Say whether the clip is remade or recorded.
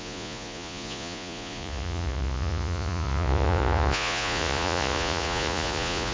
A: remade